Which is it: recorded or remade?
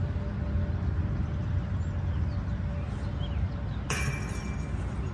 recorded